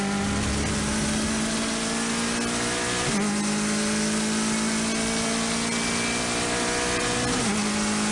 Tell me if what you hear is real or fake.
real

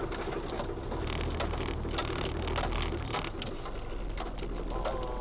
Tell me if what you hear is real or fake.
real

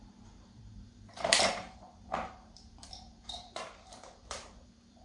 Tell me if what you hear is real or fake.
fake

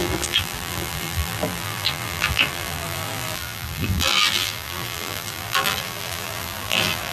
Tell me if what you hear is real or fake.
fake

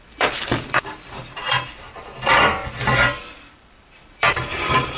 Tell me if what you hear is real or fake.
fake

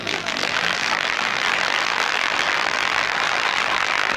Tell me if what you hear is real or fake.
fake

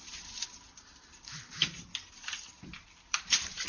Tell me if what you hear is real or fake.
fake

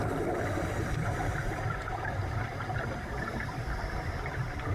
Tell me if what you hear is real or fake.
fake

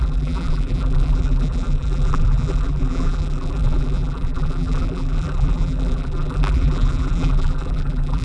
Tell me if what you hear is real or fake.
fake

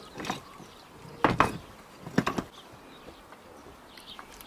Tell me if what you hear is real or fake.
real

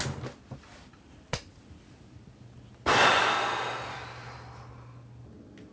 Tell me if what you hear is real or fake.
real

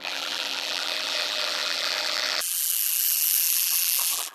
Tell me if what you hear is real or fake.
fake